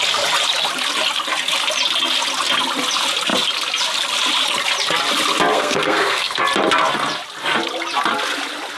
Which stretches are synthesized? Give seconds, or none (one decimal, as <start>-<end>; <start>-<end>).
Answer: 5.5-6.4